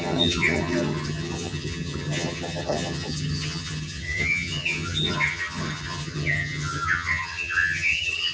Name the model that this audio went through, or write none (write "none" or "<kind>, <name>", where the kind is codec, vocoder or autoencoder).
vocoder, HiFi-GAN